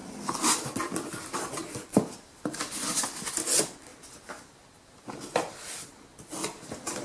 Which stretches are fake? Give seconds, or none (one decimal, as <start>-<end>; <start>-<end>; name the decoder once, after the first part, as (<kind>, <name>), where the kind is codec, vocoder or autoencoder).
none